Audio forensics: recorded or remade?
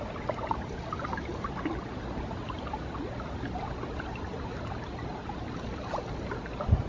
recorded